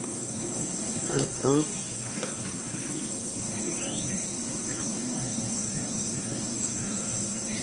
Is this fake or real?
fake